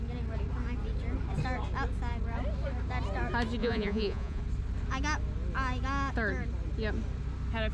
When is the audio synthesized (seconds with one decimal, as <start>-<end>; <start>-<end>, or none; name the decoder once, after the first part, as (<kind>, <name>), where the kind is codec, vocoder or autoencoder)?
3.6-4.4 (vocoder, Vocos)